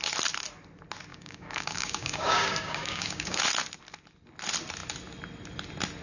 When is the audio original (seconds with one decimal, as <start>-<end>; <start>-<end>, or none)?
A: 0.0-1.1; 3.4-6.0